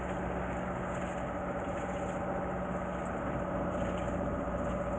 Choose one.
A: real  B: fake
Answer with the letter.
A